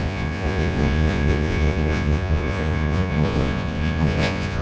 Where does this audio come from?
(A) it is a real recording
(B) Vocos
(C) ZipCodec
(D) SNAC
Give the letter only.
B